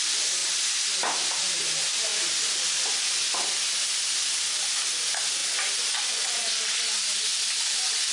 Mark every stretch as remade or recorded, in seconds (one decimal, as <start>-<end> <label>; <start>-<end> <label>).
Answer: 0.0-5.4 recorded; 5.4-6.0 remade; 6.0-8.1 recorded